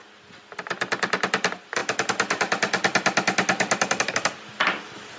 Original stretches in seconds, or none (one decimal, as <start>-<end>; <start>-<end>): 0.0-5.2